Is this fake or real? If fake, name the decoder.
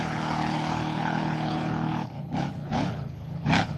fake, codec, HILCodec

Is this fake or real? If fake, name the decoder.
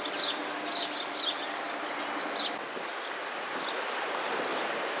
real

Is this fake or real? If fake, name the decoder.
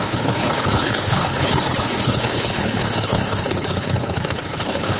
fake, codec, HILCodec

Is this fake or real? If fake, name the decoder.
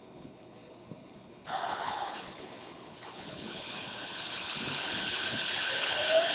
fake, codec, HILCodec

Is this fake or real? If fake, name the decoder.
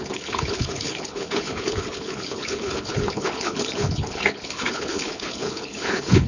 fake, codec, HILCodec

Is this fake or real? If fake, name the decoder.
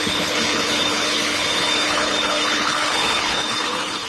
fake, codec, HILCodec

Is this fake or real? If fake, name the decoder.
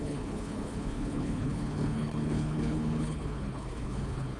fake, codec, HILCodec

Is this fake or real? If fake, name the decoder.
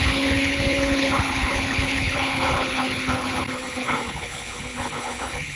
fake, codec, HILCodec